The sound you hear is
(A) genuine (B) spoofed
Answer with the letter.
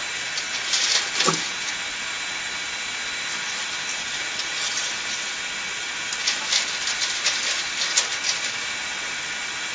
A